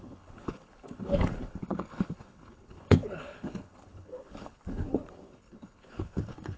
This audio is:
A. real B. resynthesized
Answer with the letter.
B